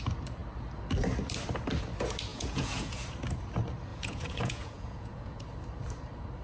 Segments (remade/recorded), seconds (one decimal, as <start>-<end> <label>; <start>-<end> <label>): 0.0-2.3 recorded; 2.3-3.0 remade; 3.0-3.9 recorded; 3.9-5.4 remade; 5.4-6.4 recorded